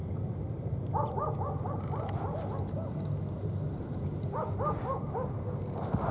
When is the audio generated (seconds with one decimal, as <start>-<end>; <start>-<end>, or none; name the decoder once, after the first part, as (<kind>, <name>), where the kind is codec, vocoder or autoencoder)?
none